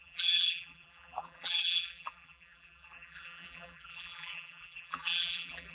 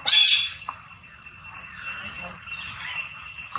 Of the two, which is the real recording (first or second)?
second